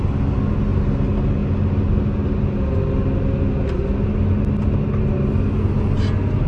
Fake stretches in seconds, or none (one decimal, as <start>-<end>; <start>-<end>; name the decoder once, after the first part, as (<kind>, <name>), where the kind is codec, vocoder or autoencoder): none